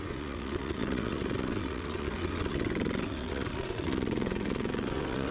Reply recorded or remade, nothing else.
remade